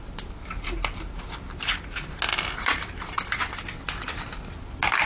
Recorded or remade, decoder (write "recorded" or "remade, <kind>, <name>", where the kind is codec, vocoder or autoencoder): recorded